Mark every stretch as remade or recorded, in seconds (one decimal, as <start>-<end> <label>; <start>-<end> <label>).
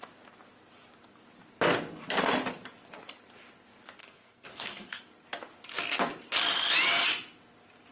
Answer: 0.0-4.0 recorded; 4.0-5.0 remade; 5.0-7.9 recorded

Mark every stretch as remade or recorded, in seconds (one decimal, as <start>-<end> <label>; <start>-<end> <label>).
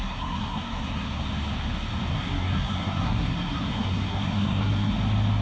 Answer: 0.0-1.2 remade; 1.2-2.1 recorded; 2.1-4.9 remade; 4.9-5.4 recorded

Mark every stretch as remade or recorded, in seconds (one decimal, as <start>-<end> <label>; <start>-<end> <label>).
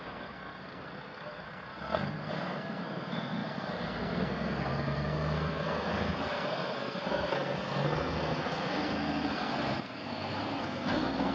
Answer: 0.0-11.3 remade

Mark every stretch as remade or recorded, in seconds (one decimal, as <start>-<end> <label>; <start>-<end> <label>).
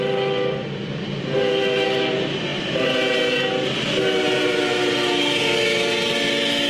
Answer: 0.0-6.7 recorded